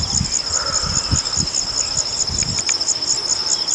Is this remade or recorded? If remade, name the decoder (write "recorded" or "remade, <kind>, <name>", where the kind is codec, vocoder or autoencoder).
recorded